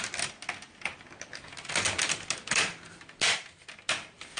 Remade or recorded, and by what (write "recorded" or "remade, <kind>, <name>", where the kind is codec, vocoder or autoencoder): recorded